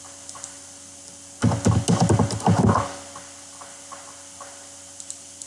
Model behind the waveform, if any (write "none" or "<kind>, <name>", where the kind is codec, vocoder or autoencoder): none